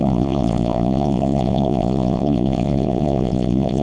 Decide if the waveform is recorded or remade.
remade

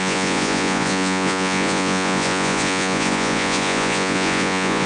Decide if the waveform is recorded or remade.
remade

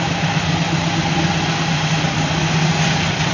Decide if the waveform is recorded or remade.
recorded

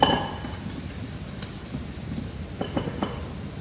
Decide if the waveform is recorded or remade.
recorded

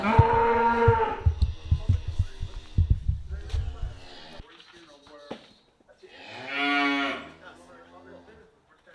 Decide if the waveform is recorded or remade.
recorded